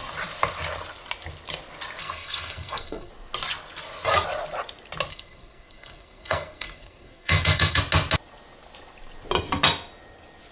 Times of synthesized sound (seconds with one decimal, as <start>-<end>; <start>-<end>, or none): 2.0-3.1; 5.1-7.8